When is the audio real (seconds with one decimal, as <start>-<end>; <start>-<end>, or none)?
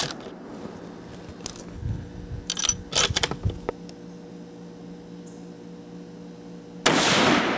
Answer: 0.0-1.6; 2.1-7.6